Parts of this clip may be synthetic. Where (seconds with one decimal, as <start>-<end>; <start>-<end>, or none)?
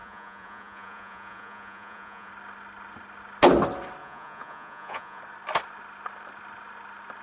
0.0-2.3; 4.0-5.2